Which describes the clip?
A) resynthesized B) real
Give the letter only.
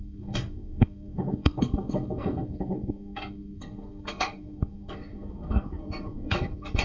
A